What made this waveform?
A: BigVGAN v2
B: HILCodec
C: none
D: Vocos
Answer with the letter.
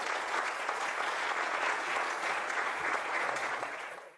D